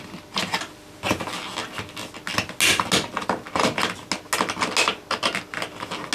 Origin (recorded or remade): recorded